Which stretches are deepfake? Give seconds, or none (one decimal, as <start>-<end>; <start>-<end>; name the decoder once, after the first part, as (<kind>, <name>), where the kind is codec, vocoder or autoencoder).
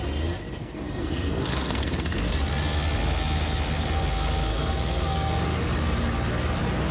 0.6-2.3 (codec, SNAC); 4.5-5.3